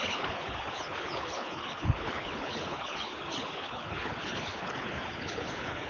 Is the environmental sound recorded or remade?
remade